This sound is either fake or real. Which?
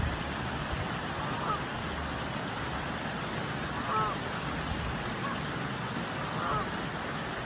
real